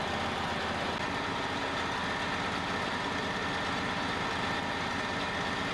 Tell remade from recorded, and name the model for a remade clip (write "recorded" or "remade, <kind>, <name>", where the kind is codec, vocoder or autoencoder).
recorded